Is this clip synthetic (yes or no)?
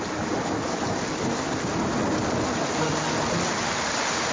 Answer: no